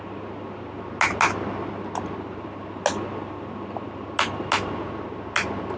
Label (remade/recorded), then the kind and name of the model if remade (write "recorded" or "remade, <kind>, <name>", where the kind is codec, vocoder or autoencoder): recorded